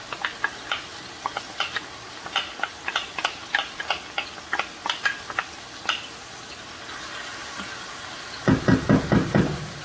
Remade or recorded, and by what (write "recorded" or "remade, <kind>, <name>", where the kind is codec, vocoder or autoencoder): recorded